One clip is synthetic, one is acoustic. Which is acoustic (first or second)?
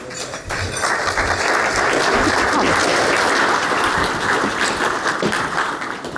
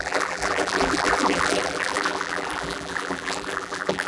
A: first